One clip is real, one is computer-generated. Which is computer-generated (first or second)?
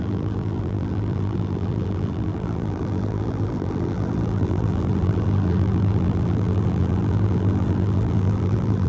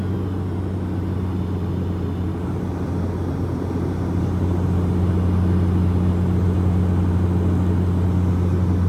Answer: first